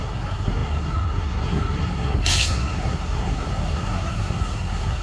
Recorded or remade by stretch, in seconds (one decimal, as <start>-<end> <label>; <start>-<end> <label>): 0.0-5.0 remade